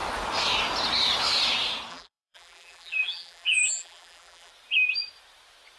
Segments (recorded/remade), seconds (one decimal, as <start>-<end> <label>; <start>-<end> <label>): 0.0-1.9 recorded; 1.9-4.5 remade; 4.5-5.8 recorded